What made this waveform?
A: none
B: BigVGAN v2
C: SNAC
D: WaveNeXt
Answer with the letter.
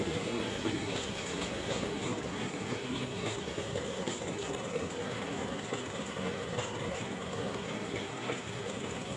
C